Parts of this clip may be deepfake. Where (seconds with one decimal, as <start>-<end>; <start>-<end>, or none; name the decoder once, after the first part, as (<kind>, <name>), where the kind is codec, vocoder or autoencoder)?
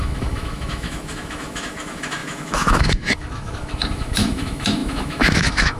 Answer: 0.0-5.8 (autoencoder, DAC-VAE)